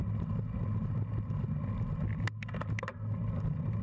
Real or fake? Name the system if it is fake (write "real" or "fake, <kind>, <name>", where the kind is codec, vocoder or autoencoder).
real